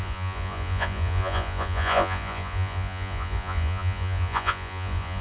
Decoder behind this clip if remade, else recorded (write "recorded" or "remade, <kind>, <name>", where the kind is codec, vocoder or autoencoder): remade, vocoder, Vocos